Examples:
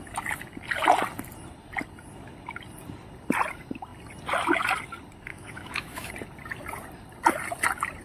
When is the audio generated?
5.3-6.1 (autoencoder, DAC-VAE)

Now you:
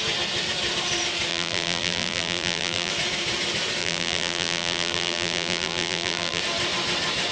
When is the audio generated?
1.3-2.9 (vocoder, BigVGAN v2); 3.8-6.4

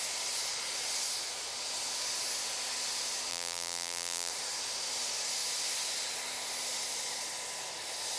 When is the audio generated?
3.3-4.3 (vocoder, BigVGAN v2)

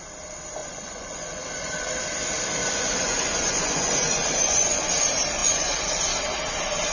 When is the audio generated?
0.6-1.9 (vocoder, Vocos); 2.6-4.9; 5.4-6.0

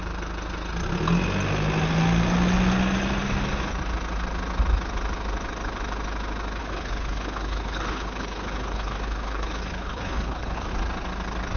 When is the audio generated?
6.6-10.7 (codec, HILCodec)

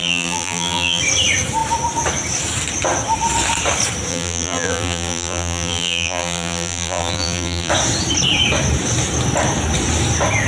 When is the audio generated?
0.0-1.0 (vocoder, BigVGAN v2); 4.1-7.7